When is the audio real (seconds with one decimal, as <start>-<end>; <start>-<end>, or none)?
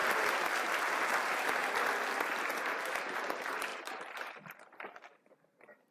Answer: 0.0-0.8; 1.6-3.2